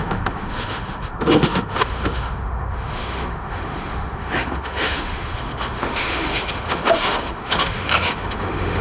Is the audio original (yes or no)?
no